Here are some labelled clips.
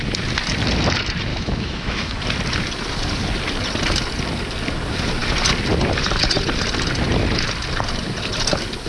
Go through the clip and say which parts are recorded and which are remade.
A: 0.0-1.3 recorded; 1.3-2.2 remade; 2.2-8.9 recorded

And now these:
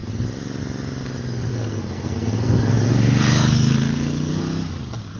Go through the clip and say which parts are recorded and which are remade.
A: 0.0-1.5 recorded; 1.5-4.4 remade; 4.4-5.2 recorded